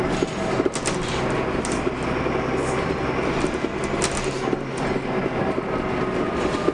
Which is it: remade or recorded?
recorded